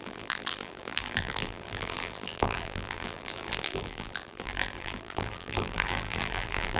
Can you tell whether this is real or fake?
fake